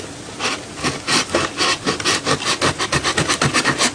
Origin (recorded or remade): recorded